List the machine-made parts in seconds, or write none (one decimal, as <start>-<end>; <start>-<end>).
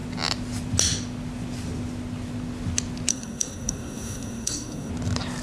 3.1-4.9